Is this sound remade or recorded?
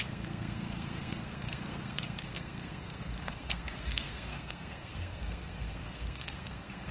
remade